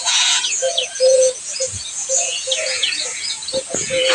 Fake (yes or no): yes